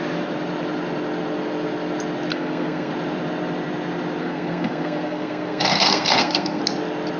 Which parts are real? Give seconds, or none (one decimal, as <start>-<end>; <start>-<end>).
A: 0.0-2.3; 2.9-4.2; 6.6-7.2